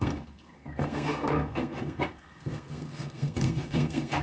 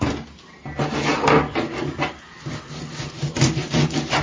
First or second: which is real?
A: second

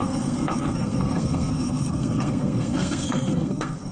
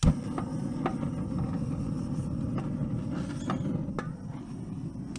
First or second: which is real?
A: second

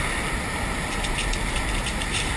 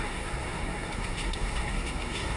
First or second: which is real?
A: first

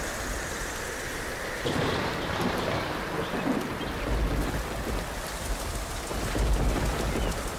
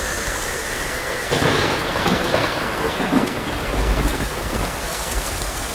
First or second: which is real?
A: first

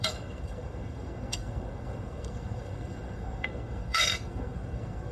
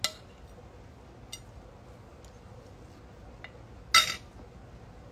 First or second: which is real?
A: second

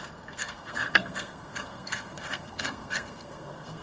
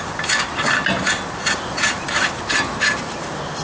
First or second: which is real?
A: second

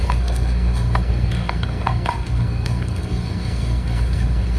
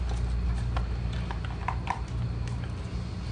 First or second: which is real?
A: second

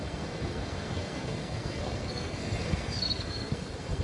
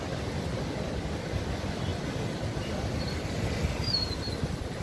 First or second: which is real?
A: second